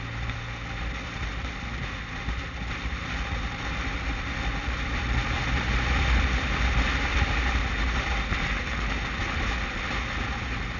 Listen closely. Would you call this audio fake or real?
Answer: real